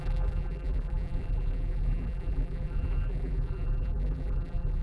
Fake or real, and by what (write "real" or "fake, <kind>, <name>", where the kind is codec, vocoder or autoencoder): fake, vocoder, BigVGAN v2